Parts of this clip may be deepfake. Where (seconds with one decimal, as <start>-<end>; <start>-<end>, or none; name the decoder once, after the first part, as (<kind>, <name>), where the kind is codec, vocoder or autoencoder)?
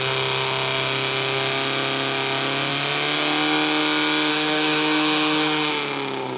4.3-5.7 (codec, SNAC)